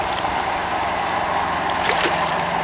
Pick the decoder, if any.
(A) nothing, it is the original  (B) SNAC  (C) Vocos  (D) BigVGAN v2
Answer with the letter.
D